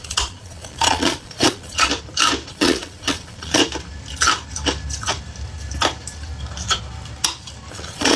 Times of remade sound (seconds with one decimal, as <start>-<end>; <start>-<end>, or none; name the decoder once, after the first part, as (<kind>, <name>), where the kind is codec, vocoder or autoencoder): 0.0-1.9 (vocoder, Vocos); 2.5-3.6; 7.7-8.2